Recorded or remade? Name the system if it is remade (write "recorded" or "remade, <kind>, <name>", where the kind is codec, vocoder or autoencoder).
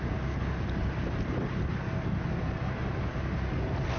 recorded